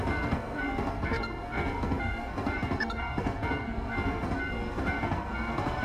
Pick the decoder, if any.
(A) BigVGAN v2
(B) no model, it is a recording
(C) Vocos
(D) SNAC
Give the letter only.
D